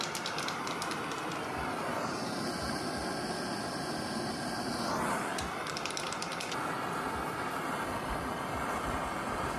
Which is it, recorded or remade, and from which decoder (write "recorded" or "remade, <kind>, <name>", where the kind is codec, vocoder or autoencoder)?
recorded